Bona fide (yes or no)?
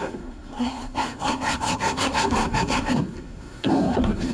no